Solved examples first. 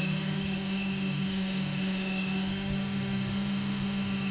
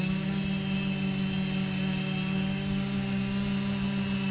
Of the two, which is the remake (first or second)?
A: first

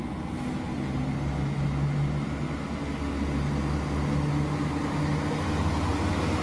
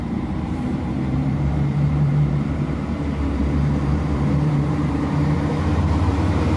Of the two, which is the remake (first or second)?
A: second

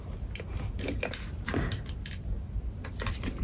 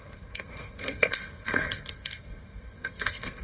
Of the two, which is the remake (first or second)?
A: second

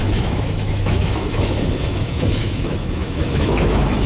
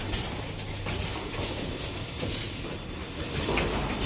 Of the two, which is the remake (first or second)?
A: first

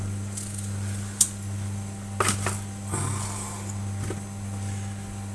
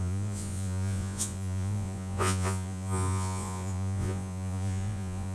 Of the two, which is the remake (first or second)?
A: second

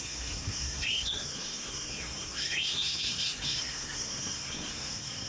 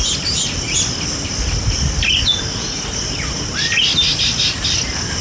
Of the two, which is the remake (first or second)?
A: first